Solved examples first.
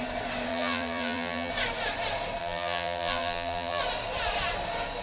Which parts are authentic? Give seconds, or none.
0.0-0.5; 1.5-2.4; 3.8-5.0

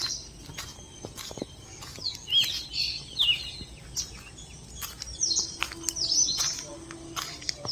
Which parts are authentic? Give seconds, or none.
0.0-7.7

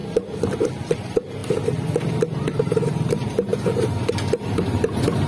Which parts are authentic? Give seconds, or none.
0.0-0.9; 1.4-2.6

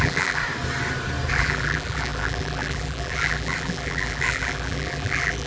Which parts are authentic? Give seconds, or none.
0.4-1.3

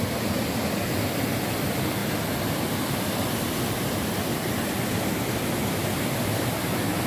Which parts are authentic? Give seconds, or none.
0.0-7.1